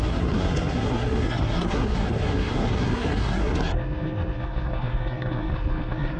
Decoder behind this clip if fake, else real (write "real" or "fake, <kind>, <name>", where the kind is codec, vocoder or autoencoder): fake, codec, SNAC